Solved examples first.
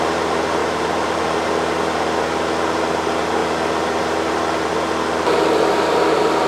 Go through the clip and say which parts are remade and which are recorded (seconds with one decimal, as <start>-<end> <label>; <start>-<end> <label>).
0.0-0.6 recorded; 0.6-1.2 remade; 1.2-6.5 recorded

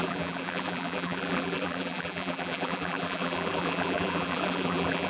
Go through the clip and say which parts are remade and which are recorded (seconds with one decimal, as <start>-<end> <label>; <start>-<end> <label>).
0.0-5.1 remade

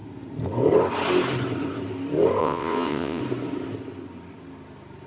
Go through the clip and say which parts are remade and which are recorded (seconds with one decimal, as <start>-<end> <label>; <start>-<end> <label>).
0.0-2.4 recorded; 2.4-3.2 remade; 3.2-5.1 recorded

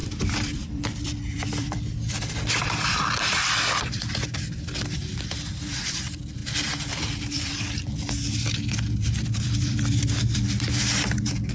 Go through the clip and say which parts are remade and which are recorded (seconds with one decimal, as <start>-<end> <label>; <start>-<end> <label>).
0.0-11.5 remade

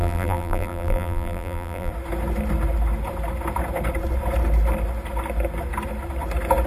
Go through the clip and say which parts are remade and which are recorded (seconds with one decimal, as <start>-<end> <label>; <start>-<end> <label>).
0.0-1.9 remade; 1.9-6.7 recorded